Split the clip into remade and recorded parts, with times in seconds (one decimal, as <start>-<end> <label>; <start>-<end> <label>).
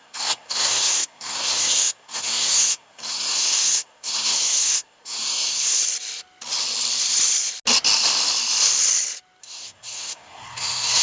0.0-5.8 remade; 5.8-9.4 recorded; 9.4-11.0 remade